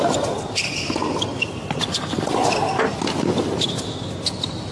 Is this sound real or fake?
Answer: real